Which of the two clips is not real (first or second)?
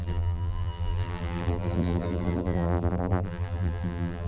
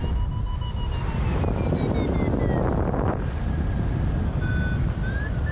first